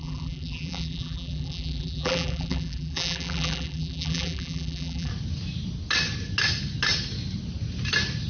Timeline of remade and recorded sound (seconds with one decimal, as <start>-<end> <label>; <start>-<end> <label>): 0.0-5.1 remade; 5.1-8.3 recorded